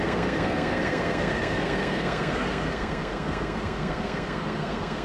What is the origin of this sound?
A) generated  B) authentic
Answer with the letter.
A